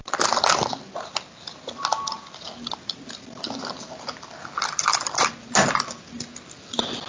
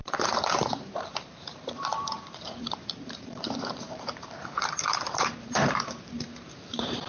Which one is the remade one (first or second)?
second